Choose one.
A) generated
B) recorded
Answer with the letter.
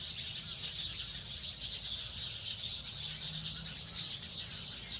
B